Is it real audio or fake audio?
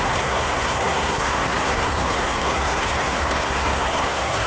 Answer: fake